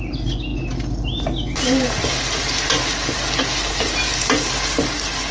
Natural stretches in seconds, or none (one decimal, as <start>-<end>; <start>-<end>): 0.0-5.3